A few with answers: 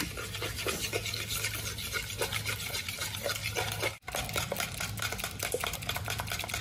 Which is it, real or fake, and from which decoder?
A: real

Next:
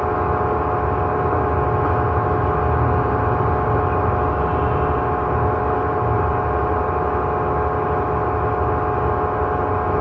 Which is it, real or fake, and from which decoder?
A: real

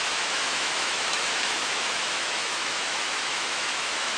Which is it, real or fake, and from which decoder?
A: fake, autoencoder, DAC-VAE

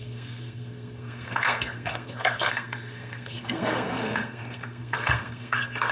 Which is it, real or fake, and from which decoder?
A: fake, codec, SNAC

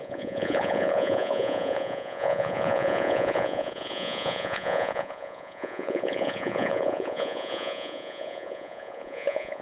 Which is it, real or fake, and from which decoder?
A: fake, vocoder, Vocos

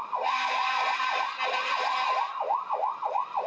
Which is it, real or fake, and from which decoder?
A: real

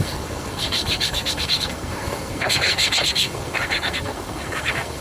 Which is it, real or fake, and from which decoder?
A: fake, codec, SNAC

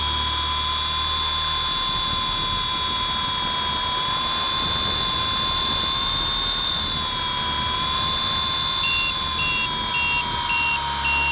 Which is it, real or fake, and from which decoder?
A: real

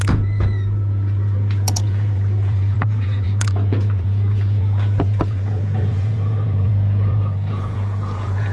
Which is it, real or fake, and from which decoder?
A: fake, vocoder, Vocos